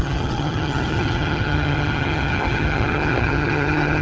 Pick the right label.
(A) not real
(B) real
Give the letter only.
A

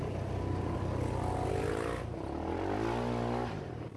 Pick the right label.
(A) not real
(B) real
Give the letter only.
B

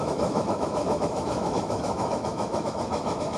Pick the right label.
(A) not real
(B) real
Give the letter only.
A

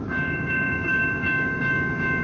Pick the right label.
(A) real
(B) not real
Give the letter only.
B